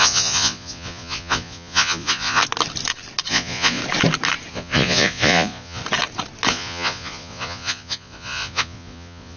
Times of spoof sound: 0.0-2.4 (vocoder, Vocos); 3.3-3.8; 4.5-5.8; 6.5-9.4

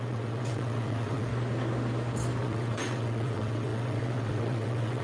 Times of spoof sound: 0.0-1.3 (vocoder, WaveNeXt); 2.4-5.0

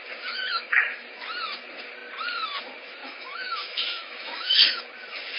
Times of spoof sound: 0.5-1.1 (autoencoder, DAC-VAE); 3.0-4.8

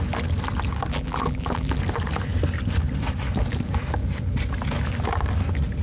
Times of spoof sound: 0.9-1.8 (vocoder, BigVGAN v2)